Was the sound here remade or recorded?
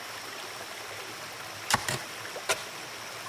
recorded